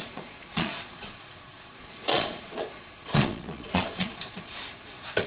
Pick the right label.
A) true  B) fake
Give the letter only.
B